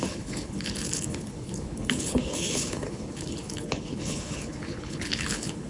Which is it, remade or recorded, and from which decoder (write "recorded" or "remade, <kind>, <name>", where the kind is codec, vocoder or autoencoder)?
remade, codec, HILCodec